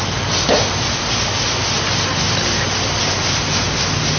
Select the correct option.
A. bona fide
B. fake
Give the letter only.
A